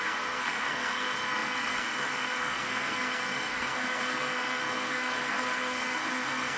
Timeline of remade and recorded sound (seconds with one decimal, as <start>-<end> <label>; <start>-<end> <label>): 0.0-6.6 remade